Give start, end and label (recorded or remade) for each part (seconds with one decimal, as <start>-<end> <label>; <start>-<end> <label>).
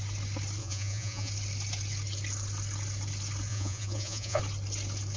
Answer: 0.0-0.6 recorded; 0.6-1.3 remade; 1.3-3.5 recorded; 3.5-4.4 remade; 4.4-5.2 recorded